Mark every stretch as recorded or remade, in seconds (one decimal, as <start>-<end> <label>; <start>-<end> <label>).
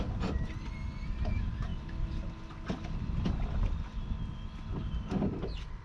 0.0-5.8 recorded